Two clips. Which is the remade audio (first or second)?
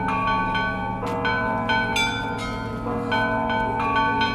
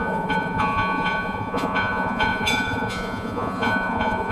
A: second